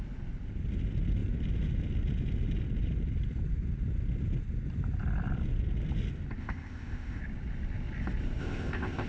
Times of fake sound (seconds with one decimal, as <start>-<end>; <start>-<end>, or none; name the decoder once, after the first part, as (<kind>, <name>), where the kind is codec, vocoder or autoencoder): 6.4-7.2 (codec, ZipCodec); 8.4-9.1